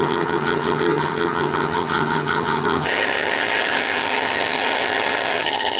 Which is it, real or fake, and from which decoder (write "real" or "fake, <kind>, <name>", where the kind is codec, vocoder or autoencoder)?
fake, vocoder, HiFi-GAN